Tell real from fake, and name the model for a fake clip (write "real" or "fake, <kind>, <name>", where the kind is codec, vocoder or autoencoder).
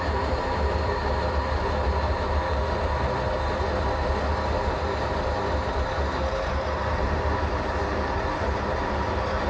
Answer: fake, vocoder, BigVGAN v2